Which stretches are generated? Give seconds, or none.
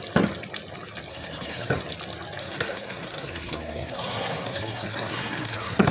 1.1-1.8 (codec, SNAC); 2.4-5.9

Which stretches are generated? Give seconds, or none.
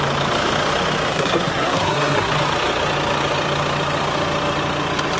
1.1-2.3 (codec, SNAC)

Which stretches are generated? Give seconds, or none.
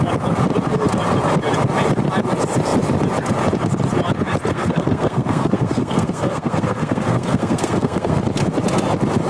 4.5-8.2 (codec, SNAC)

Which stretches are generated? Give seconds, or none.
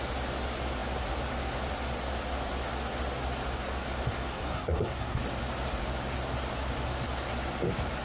4.3-5.2 (codec, SNAC)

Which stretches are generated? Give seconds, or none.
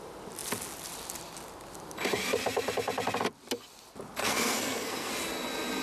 4.2-5.1 (codec, SNAC)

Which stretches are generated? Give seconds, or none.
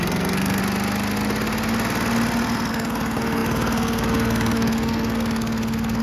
0.0-0.6 (codec, SNAC); 2.7-6.0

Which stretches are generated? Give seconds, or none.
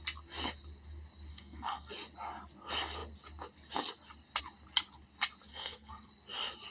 1.3-1.9 (codec, SNAC); 5.5-6.1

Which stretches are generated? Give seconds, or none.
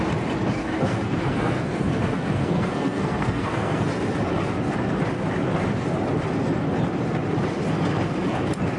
0.6-3.9 (codec, SNAC)